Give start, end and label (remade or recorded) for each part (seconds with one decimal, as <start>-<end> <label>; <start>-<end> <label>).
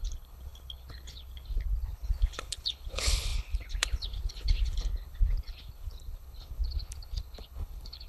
0.0-8.1 remade